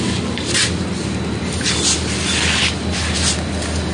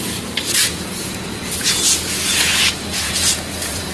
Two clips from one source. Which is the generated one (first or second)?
second